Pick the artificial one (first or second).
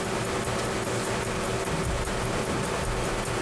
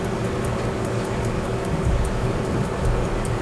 second